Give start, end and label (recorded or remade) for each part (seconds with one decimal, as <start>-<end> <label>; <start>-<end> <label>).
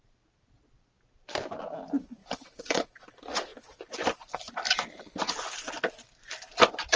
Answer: 0.0-2.2 recorded; 2.2-3.0 remade; 3.0-7.0 recorded